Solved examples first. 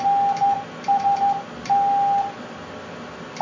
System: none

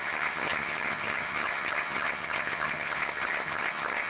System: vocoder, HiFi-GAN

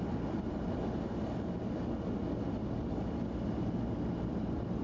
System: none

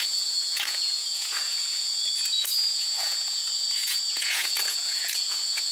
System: vocoder, Vocos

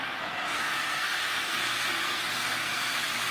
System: codec, SNAC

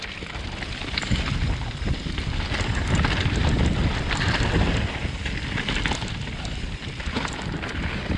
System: none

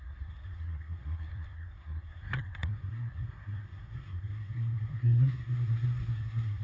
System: codec, SNAC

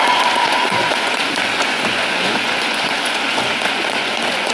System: vocoder, Vocos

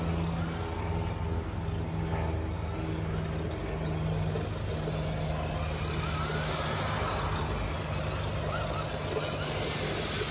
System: none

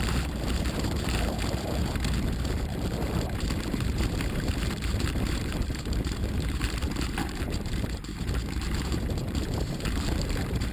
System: vocoder, BigVGAN v2